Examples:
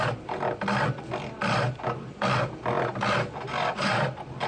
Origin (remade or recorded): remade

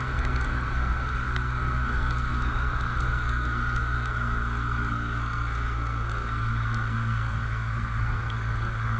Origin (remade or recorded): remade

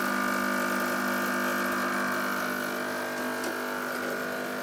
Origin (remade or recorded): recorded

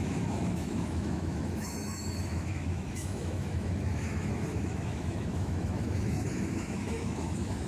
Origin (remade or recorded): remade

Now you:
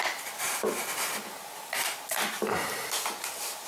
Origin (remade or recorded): recorded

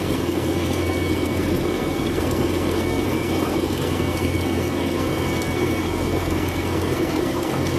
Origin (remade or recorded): remade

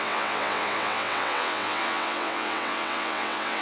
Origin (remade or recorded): remade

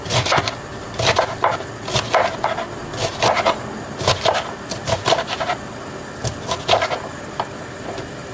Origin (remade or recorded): recorded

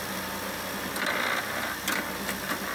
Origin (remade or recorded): recorded